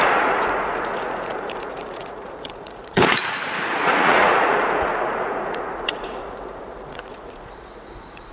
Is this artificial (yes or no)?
yes